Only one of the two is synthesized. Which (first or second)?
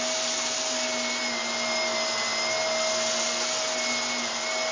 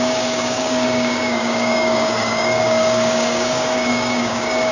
second